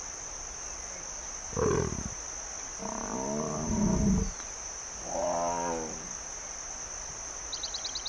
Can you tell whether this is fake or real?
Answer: real